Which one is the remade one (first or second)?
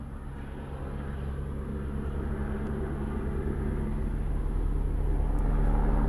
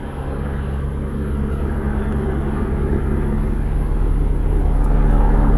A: second